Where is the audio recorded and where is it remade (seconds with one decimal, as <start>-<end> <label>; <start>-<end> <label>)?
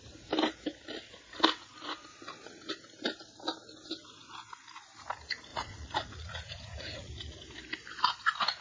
0.0-2.1 recorded; 2.1-2.6 remade; 2.6-5.5 recorded; 5.5-7.1 remade; 7.1-8.6 recorded